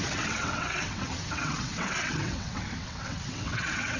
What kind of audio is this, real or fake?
fake